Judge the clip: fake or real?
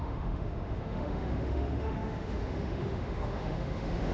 fake